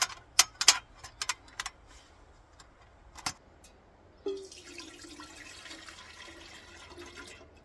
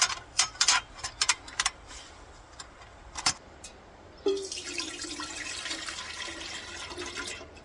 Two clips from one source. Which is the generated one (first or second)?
second